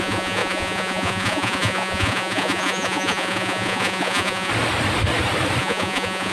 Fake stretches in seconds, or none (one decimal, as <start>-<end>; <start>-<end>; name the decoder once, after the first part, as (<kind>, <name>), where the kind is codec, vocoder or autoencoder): 0.0-4.5 (vocoder, Vocos); 5.6-6.3